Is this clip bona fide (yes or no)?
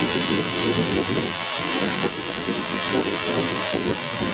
no